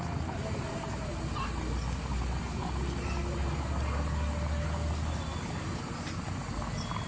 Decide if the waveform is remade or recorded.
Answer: recorded